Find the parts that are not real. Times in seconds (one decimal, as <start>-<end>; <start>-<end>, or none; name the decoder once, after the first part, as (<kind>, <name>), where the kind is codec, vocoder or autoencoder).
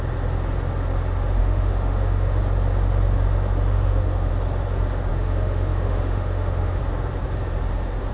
1.4-2.4 (autoencoder, DAC-VAE); 3.7-4.3; 5.1-6.8